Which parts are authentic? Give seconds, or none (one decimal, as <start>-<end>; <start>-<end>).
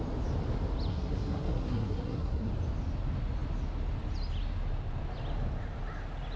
0.0-0.9; 2.5-6.4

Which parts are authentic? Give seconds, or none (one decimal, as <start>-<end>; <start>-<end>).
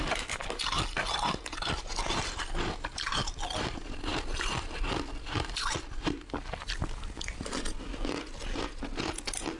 0.0-9.6